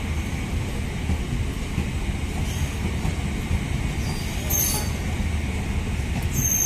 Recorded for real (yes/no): yes